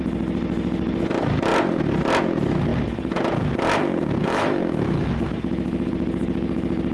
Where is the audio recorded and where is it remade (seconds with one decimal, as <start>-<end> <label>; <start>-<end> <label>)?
0.0-4.2 recorded; 4.2-5.9 remade; 5.9-6.9 recorded